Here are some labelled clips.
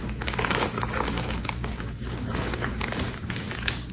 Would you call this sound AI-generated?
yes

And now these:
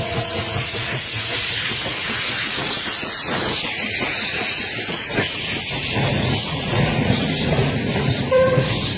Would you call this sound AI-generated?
yes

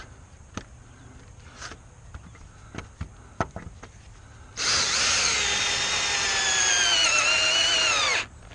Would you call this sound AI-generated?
no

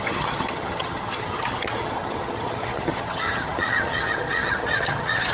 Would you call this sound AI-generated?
yes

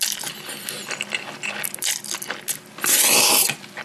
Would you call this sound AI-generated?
no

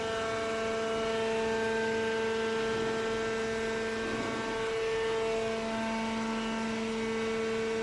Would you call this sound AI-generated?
no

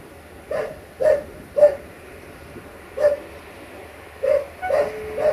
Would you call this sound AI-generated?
no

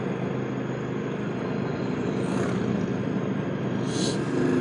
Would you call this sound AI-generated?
no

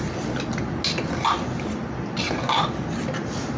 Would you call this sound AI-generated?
no